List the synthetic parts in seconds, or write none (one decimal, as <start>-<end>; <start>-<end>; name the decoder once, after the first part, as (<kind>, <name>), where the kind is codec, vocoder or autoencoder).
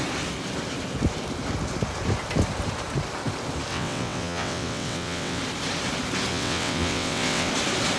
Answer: 3.7-5.4 (vocoder, WaveNeXt); 6.3-7.5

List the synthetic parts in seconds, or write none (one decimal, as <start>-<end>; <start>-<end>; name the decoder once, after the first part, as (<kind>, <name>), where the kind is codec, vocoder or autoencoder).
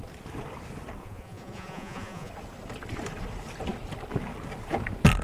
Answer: 1.0-2.3 (vocoder, Vocos)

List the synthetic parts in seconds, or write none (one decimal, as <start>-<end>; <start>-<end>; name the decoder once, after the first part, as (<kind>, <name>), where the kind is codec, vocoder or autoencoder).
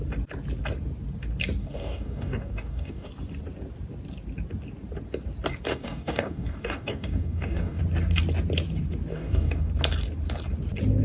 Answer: 1.6-3.1 (codec, DAC); 5.7-7.8; 9.1-9.7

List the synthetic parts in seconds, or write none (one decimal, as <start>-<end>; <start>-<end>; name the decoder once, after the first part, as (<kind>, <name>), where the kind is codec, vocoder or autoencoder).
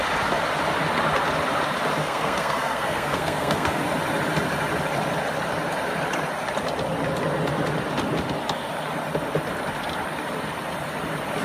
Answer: 2.0-3.8 (codec, SNAC)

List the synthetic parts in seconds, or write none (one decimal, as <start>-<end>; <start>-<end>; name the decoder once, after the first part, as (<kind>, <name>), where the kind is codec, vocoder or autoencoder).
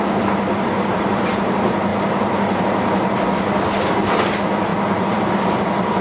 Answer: 4.7-6.0 (vocoder, BigVGAN v2)